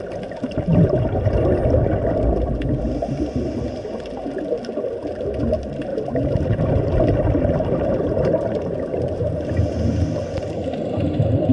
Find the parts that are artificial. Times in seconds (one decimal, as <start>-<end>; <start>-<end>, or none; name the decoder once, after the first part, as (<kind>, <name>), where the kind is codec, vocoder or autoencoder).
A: 0.7-1.5 (vocoder, BigVGAN v2); 5.9-9.5